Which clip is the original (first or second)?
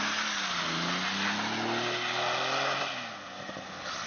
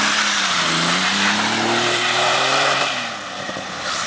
first